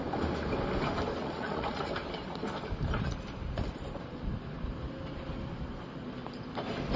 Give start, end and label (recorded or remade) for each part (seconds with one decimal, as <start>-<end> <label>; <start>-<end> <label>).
0.0-1.2 recorded; 1.2-1.9 remade; 1.9-7.0 recorded